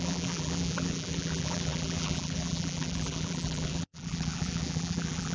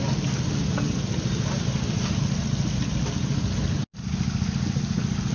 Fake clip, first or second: first